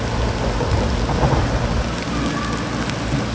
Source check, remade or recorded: recorded